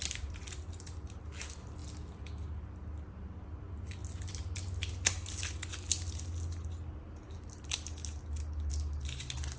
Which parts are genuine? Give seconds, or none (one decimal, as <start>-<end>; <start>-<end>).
0.0-9.6